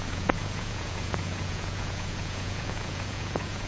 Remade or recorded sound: remade